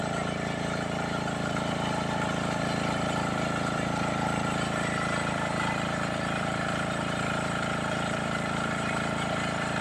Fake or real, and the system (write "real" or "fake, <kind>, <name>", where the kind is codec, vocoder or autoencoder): fake, vocoder, BigVGAN v2